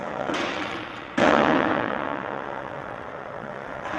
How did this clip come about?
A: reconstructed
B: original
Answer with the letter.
A